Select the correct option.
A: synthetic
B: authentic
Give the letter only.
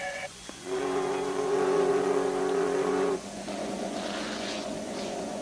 A